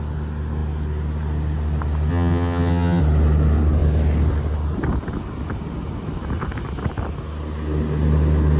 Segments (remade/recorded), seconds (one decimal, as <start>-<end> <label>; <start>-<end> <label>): 0.0-2.1 recorded; 2.1-3.0 remade; 3.0-8.6 recorded